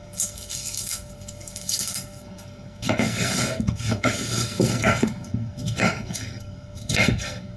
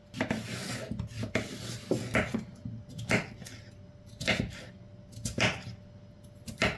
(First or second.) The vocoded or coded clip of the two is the first